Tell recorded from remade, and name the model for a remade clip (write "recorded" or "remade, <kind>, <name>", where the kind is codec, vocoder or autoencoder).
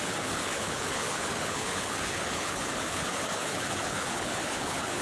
remade, codec, HILCodec